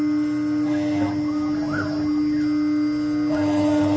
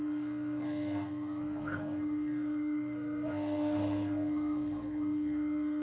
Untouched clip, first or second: first